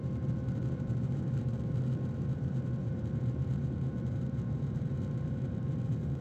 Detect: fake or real fake